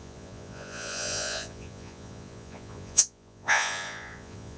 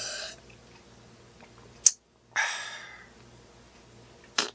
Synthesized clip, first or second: first